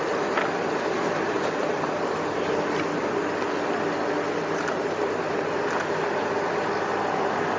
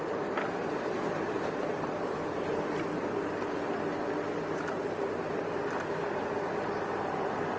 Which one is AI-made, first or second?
second